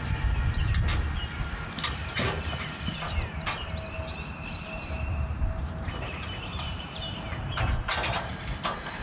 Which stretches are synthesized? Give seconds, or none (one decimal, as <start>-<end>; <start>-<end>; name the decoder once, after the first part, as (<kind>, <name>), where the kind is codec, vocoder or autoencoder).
0.9-2.2 (vocoder, BigVGAN v2); 5.1-8.3